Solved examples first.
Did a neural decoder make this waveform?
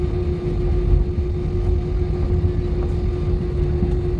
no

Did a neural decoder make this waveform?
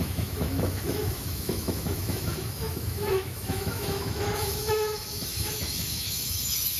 yes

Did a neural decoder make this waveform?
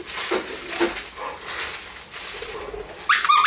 no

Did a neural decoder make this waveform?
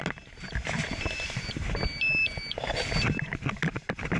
no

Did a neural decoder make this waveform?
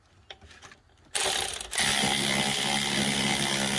no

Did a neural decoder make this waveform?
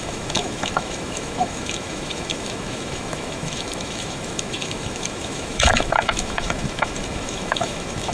yes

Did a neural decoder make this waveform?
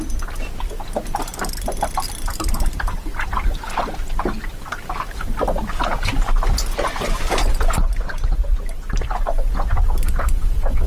no